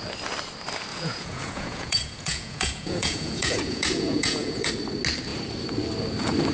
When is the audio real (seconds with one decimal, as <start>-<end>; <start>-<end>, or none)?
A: 0.0-0.9; 4.7-6.5